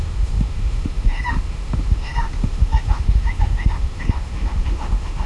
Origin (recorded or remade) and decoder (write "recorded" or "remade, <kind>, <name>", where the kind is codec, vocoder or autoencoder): remade, autoencoder, DAC-VAE